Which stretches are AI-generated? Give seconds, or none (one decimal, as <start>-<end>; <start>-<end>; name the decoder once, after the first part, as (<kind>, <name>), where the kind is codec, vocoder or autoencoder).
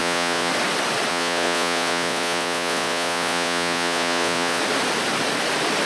0.0-0.5 (vocoder, Vocos); 1.1-4.6